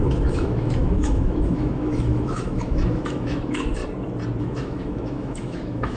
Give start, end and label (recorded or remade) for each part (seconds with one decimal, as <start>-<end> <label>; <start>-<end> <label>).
0.0-3.8 remade; 3.8-4.4 recorded; 4.4-6.0 remade